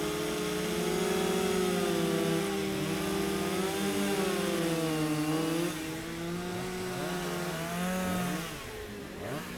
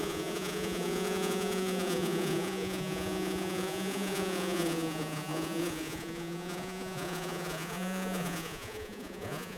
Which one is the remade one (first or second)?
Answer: second